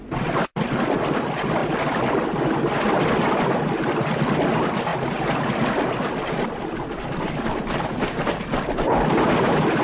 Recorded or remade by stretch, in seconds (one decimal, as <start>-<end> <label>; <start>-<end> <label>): 0.0-9.8 recorded